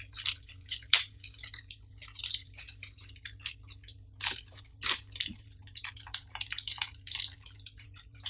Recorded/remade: remade